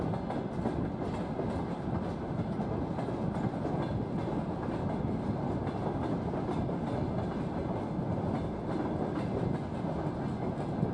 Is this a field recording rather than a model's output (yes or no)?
yes